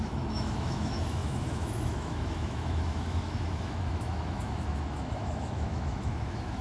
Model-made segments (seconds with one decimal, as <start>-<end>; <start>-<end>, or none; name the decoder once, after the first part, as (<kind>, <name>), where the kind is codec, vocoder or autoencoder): 0.0-6.6 (autoencoder, DAC-VAE)